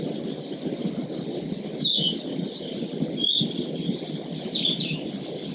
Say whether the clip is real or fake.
real